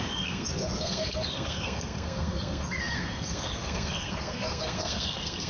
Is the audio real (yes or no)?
no